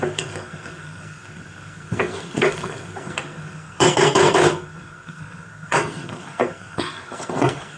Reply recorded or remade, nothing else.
remade